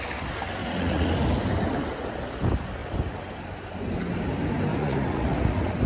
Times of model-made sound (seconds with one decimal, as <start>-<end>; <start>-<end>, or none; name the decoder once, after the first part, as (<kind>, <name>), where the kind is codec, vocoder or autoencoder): 0.6-1.1 (vocoder, Vocos); 4.7-5.9